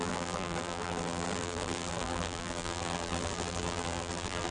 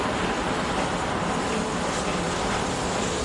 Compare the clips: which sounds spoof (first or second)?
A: first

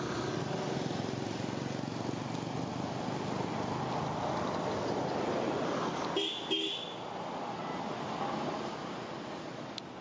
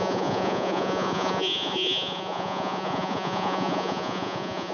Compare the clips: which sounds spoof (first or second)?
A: second